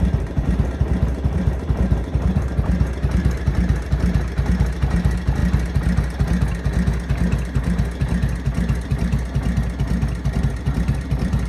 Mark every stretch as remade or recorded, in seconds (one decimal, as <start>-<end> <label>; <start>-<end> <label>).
0.0-5.4 remade; 5.4-10.4 recorded; 10.4-11.5 remade

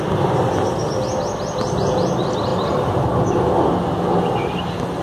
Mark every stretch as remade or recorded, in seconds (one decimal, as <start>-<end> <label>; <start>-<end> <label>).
0.0-5.0 recorded

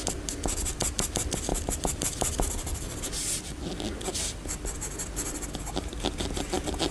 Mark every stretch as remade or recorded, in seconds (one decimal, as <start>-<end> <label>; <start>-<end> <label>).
0.0-1.5 recorded; 1.5-4.1 remade; 4.1-6.9 recorded

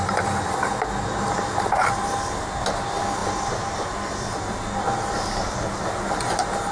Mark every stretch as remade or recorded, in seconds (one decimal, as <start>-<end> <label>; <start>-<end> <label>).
0.0-6.7 recorded

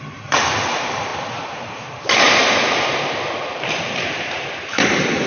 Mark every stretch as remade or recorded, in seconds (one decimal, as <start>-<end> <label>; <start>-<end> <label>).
0.0-5.3 remade